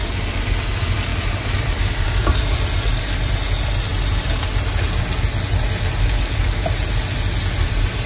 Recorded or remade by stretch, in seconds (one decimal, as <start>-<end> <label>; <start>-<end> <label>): 0.0-1.1 recorded; 1.1-3.0 remade; 3.0-8.1 recorded